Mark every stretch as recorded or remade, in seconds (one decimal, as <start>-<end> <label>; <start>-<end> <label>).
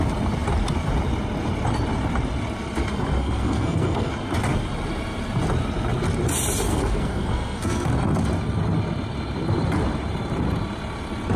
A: 0.0-3.2 recorded; 3.2-4.1 remade; 4.1-6.7 recorded; 6.7-7.9 remade; 7.9-11.4 recorded